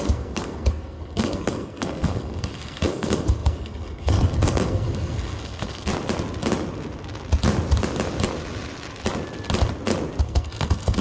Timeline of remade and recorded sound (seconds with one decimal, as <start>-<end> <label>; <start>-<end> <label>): 0.0-5.9 remade; 5.9-10.2 recorded; 10.2-11.0 remade